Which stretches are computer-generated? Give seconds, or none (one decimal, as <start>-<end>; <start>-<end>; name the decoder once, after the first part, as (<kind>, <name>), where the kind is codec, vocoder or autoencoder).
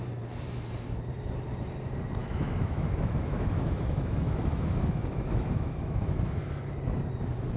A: 2.2-6.4 (autoencoder, DAC-VAE)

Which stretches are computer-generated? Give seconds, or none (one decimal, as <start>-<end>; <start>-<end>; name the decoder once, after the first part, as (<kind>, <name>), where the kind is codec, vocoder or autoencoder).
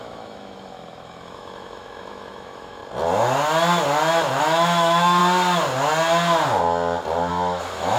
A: 0.0-2.8 (autoencoder, DAC-VAE); 4.4-5.2; 7.3-8.0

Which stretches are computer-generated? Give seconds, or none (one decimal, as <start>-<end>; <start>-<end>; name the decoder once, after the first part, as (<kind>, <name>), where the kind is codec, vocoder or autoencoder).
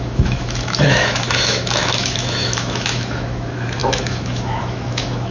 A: 0.0-5.3 (autoencoder, DAC-VAE)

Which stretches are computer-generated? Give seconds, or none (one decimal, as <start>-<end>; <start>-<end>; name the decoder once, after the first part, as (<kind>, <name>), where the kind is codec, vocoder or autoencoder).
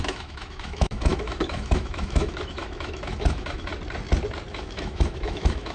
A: 0.0-3.7 (autoencoder, DAC-VAE); 4.5-5.7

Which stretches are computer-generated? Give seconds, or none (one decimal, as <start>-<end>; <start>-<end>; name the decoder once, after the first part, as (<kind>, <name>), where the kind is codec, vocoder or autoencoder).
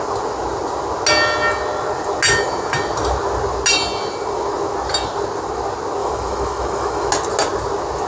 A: 6.0-7.1 (autoencoder, DAC-VAE)